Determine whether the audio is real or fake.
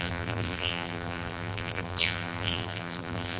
fake